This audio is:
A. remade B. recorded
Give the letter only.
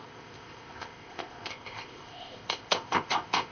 A